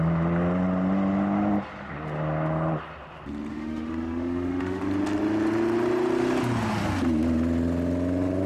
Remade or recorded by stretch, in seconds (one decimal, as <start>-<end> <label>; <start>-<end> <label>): 0.0-3.5 recorded; 3.5-4.8 remade; 4.8-8.5 recorded